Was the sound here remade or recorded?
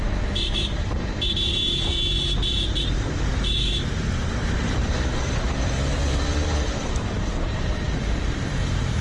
remade